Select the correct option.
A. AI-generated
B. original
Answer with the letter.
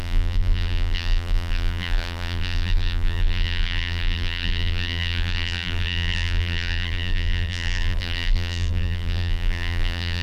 A